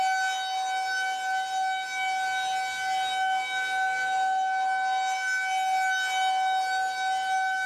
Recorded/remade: recorded